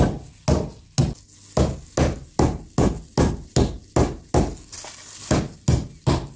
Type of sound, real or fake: real